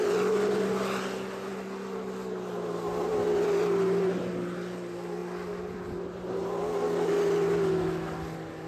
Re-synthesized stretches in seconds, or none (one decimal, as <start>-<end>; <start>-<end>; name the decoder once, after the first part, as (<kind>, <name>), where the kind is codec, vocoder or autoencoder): none